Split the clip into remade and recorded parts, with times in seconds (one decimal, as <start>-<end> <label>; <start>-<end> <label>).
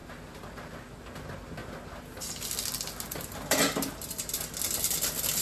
0.0-5.4 recorded